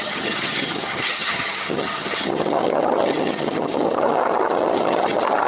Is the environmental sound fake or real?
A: fake